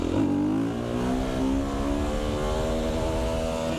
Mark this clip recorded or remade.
recorded